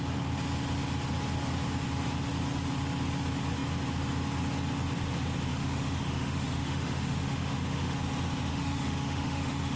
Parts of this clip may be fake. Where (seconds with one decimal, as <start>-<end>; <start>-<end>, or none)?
5.5-8.0; 8.5-9.8